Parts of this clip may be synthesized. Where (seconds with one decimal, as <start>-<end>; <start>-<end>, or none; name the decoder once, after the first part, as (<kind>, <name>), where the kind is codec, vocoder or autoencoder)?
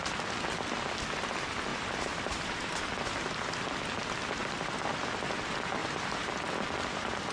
1.7-2.8 (vocoder, BigVGAN v2); 4.4-5.0; 5.8-6.3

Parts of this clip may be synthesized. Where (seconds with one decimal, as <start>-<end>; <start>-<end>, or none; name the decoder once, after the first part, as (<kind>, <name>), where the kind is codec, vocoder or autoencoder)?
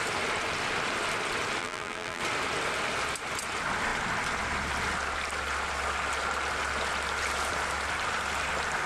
1.6-2.2 (vocoder, BigVGAN v2)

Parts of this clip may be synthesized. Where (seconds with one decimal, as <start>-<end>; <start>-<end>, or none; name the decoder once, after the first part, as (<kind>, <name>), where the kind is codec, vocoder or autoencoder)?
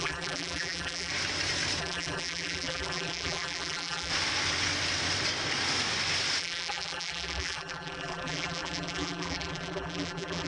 0.0-1.1 (vocoder, BigVGAN v2); 1.8-4.1; 6.4-10.5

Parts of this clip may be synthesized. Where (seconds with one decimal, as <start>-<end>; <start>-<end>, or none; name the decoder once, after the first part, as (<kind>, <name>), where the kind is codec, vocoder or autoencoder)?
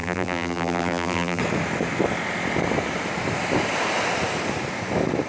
0.0-1.4 (vocoder, BigVGAN v2)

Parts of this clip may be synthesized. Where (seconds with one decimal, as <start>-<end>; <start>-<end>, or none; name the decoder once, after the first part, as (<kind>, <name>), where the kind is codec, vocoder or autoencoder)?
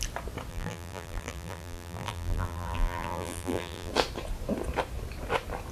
0.5-3.9 (vocoder, BigVGAN v2)